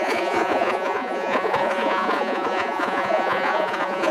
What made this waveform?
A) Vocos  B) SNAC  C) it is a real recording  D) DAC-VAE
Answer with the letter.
A